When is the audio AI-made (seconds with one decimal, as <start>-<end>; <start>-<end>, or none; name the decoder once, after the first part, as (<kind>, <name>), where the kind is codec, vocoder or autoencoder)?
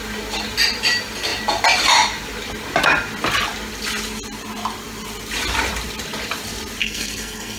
6.8-7.6 (codec, SNAC)